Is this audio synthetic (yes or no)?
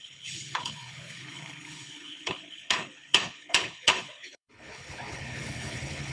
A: yes